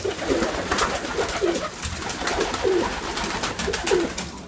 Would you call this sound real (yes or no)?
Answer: yes